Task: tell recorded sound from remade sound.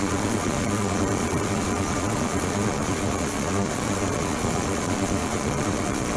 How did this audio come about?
remade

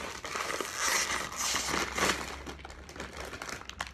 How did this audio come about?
recorded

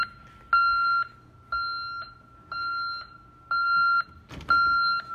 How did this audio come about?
recorded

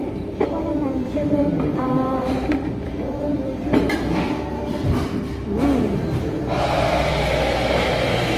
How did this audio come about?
remade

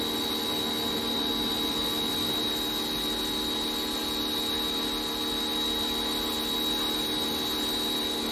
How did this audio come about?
recorded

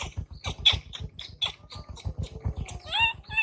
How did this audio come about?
recorded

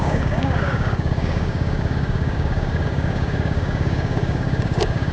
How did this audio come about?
remade